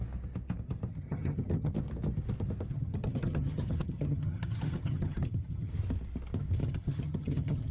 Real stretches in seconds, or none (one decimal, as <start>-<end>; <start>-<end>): 0.0-0.9; 1.7-2.7; 5.7-6.6